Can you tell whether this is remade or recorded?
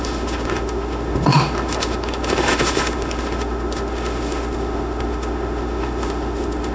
remade